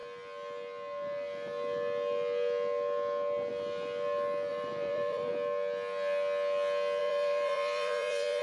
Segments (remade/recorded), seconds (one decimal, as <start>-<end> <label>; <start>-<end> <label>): 0.0-4.5 recorded; 4.5-5.3 remade; 5.3-7.0 recorded; 7.0-8.4 remade